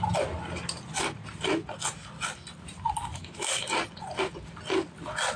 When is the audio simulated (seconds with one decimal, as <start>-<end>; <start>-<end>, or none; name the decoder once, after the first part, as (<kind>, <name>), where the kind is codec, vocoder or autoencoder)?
3.1-3.7 (autoencoder, DAC-VAE)

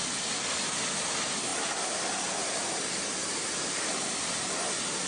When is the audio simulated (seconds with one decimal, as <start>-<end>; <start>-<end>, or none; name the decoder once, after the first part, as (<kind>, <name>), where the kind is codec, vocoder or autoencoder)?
none

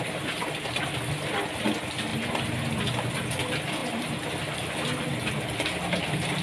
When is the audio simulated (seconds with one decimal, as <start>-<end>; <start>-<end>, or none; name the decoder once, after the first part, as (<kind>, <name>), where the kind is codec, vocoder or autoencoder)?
none

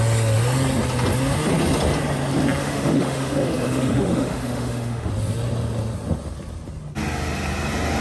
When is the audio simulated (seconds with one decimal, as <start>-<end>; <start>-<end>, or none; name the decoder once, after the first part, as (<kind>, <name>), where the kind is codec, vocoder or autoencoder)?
2.6-5.1 (autoencoder, DAC-VAE)

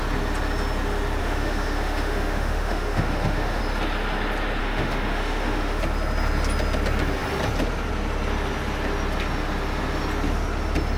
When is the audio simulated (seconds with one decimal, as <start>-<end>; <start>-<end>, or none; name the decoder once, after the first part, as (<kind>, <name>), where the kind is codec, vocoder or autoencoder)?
1.2-3.6 (autoencoder, DAC-VAE); 4.6-5.8

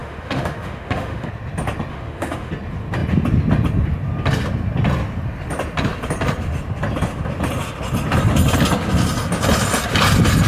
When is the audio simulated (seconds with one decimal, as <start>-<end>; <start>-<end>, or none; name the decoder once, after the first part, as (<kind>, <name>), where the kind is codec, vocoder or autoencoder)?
0.0-1.3 (autoencoder, DAC-VAE); 1.9-2.5

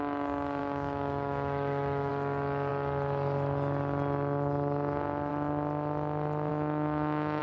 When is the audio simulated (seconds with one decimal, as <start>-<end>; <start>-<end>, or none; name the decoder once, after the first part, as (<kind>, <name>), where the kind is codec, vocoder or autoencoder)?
0.6-2.1 (autoencoder, DAC-VAE); 6.5-7.4